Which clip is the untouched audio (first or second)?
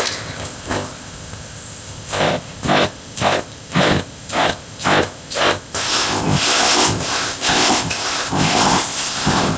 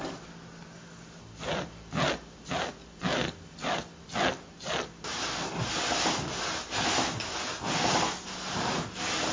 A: second